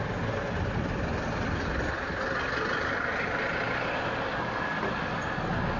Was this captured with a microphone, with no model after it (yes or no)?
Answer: yes